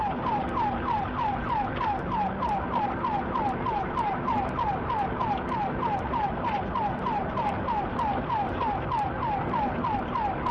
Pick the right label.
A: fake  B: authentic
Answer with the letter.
B